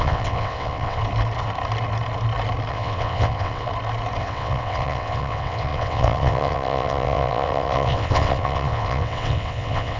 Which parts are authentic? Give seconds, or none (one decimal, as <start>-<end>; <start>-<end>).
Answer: 1.0-2.7; 3.7-4.2